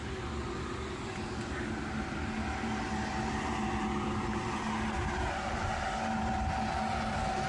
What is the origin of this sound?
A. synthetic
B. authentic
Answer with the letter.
B